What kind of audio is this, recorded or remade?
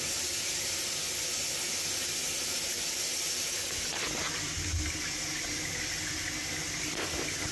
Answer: recorded